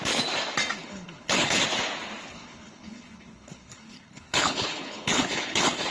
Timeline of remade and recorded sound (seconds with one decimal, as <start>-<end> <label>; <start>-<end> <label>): 0.0-0.8 recorded; 0.8-1.6 remade; 1.6-2.3 recorded; 2.3-5.9 remade